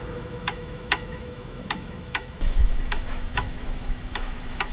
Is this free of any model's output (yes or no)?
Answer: no